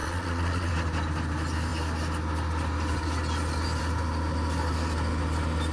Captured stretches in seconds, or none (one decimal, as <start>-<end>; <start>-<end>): 0.7-5.7

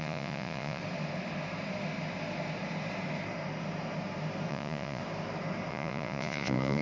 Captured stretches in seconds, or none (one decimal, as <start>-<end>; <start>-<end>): 0.8-4.5; 5.0-5.7